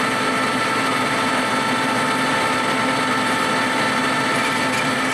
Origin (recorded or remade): recorded